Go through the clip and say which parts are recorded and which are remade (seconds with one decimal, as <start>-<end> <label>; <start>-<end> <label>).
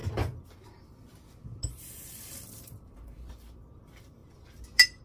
0.0-1.7 recorded; 1.7-4.2 remade; 4.2-5.0 recorded